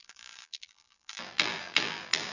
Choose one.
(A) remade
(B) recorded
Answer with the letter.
A